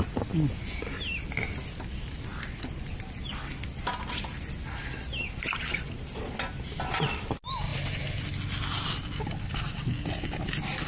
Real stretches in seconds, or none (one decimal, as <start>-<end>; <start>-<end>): 0.0-10.9